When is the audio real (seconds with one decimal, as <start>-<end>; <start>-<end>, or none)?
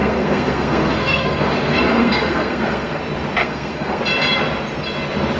3.0-3.4; 4.0-5.4